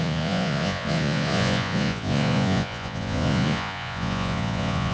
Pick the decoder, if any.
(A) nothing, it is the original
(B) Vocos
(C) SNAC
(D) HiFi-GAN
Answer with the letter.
B